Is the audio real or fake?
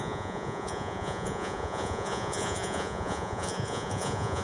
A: fake